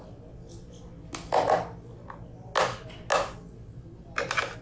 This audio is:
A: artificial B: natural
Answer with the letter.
B